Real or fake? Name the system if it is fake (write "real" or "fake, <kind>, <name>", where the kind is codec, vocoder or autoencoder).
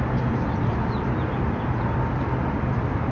real